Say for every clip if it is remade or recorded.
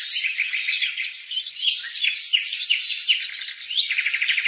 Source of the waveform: recorded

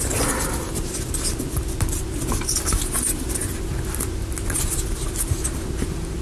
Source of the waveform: recorded